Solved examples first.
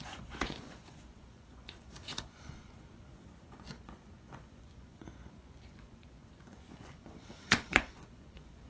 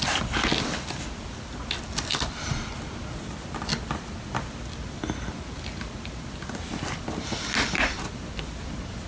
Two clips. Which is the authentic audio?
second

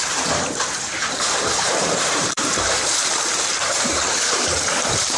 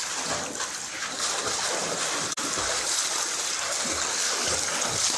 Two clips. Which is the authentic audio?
second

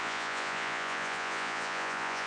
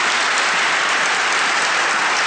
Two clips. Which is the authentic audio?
second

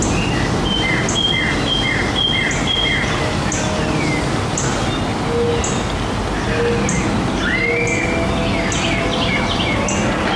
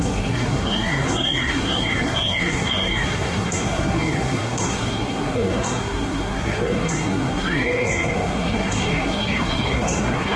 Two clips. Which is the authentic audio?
first